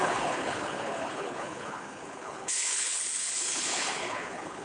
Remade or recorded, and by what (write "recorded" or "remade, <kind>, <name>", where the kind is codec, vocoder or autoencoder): remade, codec, HILCodec